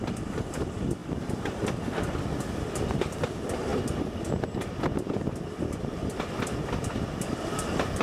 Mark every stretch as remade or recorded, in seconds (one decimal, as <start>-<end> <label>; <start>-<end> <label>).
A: 0.0-8.0 recorded